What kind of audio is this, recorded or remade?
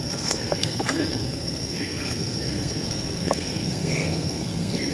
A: remade